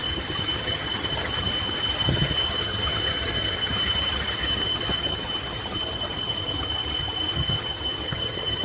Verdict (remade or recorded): remade